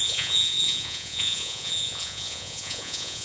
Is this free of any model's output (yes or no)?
no